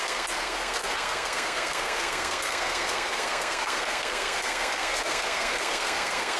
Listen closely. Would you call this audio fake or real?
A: fake